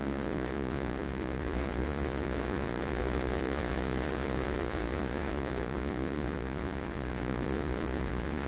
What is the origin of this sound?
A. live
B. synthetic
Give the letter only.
B